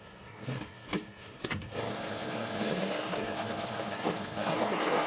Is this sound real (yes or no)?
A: no